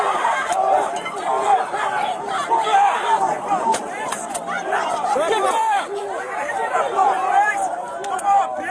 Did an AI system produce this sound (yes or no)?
yes